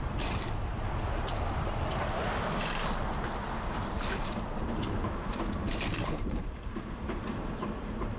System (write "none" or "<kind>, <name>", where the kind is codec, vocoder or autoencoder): vocoder, BigVGAN v2